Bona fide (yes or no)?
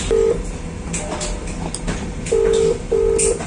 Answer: yes